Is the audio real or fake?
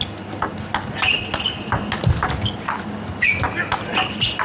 real